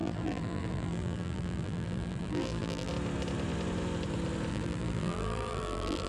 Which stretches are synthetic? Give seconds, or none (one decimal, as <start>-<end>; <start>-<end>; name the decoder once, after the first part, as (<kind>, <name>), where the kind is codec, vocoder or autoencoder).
0.0-2.9 (vocoder, BigVGAN v2); 4.5-6.1